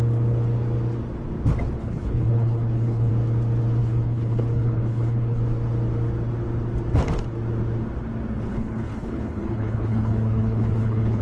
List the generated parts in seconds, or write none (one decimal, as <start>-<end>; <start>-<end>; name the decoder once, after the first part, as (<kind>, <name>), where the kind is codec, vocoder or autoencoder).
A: 1.8-3.1 (codec, HILCodec); 3.8-5.4; 8.5-11.2

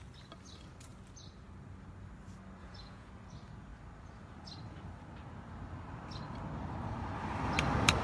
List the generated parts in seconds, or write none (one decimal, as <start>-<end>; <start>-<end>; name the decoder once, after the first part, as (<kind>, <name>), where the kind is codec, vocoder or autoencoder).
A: 2.6-3.1 (vocoder, Vocos)

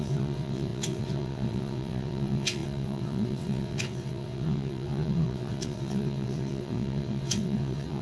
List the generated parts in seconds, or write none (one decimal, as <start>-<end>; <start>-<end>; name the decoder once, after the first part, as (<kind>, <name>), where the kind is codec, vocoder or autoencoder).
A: 0.0-8.0 (vocoder, WaveNeXt)

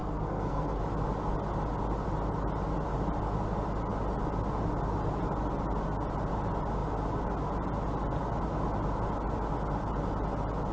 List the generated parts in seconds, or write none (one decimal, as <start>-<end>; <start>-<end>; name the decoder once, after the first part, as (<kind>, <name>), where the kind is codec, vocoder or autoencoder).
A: 0.0-0.8 (codec, SNAC)

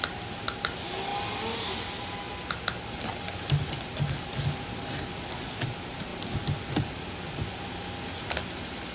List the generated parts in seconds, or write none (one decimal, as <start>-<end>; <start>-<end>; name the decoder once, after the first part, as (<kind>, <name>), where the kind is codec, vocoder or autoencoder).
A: 6.1-6.7 (vocoder, BigVGAN v2)

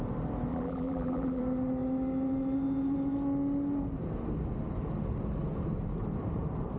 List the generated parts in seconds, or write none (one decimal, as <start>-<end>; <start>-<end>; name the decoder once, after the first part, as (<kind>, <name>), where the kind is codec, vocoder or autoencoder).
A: 0.5-1.4 (vocoder, BigVGAN v2)

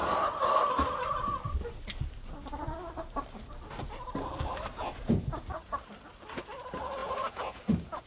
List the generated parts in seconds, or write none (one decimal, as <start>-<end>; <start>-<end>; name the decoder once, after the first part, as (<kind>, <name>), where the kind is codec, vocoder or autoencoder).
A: 4.7-5.8 (vocoder, Vocos); 7.0-8.1

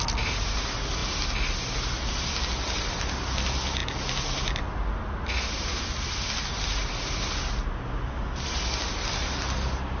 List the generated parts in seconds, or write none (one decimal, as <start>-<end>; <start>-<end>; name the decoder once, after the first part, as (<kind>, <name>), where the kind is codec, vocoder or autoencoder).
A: none